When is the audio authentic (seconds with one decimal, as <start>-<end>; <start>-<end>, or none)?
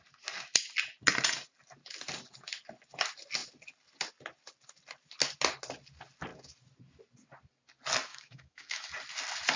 0.0-8.1; 8.9-9.6